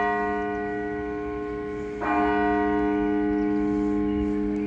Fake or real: real